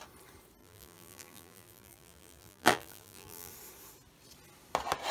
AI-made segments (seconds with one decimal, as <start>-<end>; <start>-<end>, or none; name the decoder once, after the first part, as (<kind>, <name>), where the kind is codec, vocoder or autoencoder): 0.6-3.5 (vocoder, BigVGAN v2)